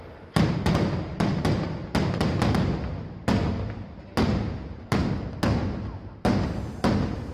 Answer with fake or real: real